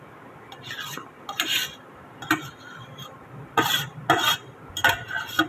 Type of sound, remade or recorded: recorded